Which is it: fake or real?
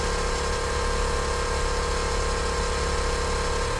real